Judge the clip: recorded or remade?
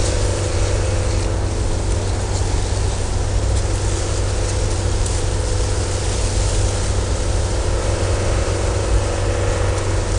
recorded